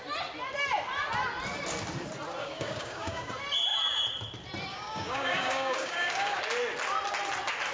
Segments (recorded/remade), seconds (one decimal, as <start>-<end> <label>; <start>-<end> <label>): 0.0-2.4 recorded; 2.4-3.3 remade; 3.3-4.7 recorded; 4.7-6.4 remade; 6.4-7.7 recorded

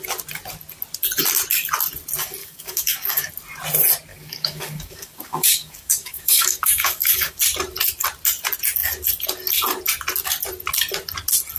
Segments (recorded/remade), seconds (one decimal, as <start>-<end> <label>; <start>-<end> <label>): 0.0-2.4 recorded; 2.4-3.3 remade; 3.3-4.1 recorded; 4.1-7.4 remade; 7.4-11.6 recorded

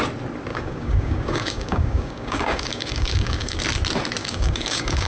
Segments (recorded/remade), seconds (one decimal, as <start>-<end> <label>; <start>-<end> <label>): 0.0-0.5 recorded; 0.5-3.6 remade; 3.6-4.2 recorded; 4.2-5.1 remade

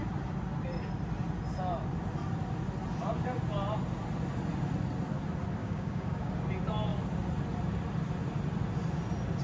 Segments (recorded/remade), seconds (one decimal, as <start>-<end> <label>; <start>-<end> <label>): 0.0-5.6 recorded; 5.6-6.3 remade; 6.3-9.4 recorded

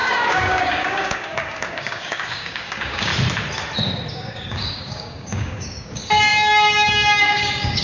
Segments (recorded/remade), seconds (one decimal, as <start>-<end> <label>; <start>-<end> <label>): 0.0-3.1 remade; 3.1-4.1 recorded; 4.1-7.8 remade

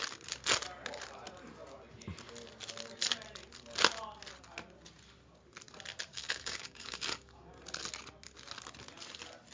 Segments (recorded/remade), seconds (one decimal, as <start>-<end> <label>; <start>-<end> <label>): 0.0-6.1 recorded; 6.1-7.5 remade; 7.5-9.5 recorded

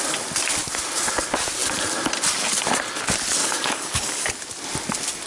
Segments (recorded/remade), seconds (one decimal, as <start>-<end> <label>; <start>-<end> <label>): 0.0-3.4 recorded; 3.4-4.3 remade; 4.3-5.3 recorded